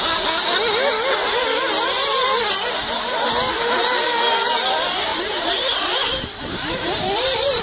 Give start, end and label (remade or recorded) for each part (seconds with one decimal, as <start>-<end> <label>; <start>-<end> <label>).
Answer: 0.0-5.1 recorded; 5.1-7.6 remade